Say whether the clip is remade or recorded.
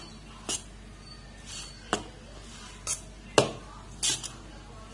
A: recorded